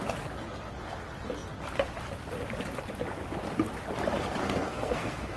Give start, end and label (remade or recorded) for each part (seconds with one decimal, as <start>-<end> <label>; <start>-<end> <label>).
0.0-4.4 recorded; 4.4-5.4 remade